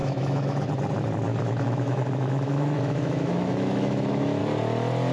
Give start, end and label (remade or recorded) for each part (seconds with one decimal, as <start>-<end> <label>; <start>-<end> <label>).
0.0-0.7 remade; 0.7-1.3 recorded; 1.3-4.4 remade; 4.4-5.1 recorded